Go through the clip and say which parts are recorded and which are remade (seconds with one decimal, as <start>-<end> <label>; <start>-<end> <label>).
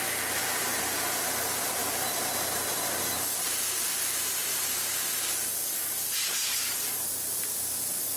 0.0-8.2 recorded